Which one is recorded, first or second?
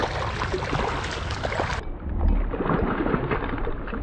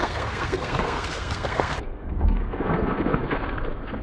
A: first